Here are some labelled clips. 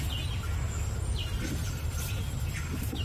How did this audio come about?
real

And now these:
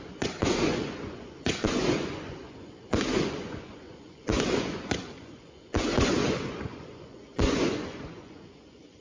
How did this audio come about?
fake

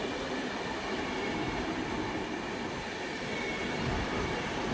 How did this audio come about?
real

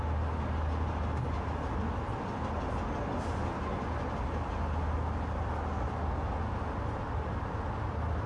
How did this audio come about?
real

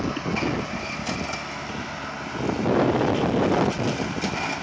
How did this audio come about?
real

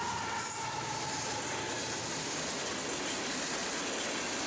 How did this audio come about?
real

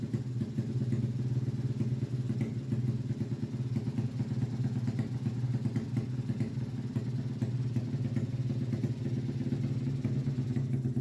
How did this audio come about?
real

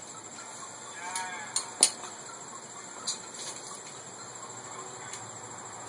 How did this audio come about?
real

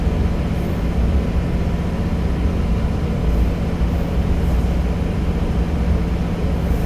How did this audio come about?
real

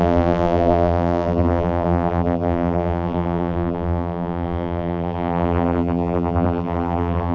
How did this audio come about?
fake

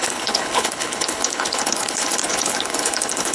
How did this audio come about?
fake